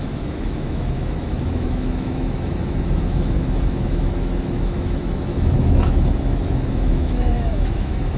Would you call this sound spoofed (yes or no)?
yes